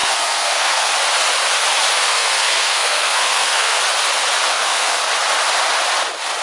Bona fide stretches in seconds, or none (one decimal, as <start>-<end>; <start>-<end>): 0.9-2.0; 3.8-4.5; 5.0-6.4